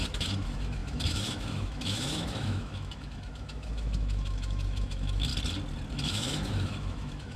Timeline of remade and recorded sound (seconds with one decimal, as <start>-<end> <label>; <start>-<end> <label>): 0.0-5.3 remade; 5.3-5.9 recorded; 5.9-7.4 remade